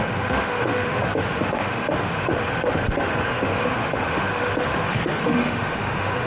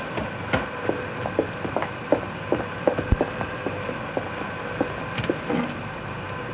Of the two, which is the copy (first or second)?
first